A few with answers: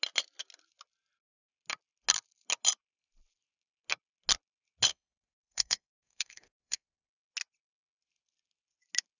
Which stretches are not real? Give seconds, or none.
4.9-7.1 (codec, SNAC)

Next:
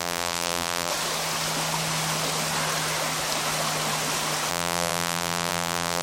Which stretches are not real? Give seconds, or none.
0.0-0.9 (vocoder, BigVGAN v2); 4.5-6.0

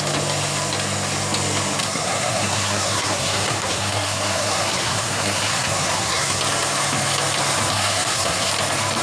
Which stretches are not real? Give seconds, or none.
1.8-6.4 (codec, SNAC); 7.7-8.5

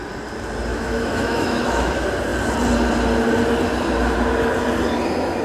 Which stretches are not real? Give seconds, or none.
0.7-1.9 (autoencoder, DAC-VAE)

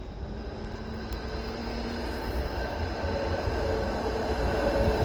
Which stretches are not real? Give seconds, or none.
none

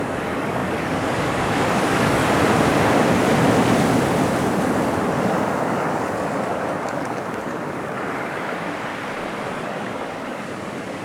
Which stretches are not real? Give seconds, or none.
0.0-2.2 (codec, DAC); 5.1-8.9; 9.5-11.0

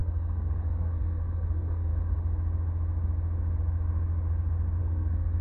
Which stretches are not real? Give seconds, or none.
0.0-1.9 (codec, SNAC); 4.8-5.4

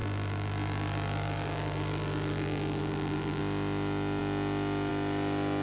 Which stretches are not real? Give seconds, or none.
0.0-3.4 (vocoder, BigVGAN v2)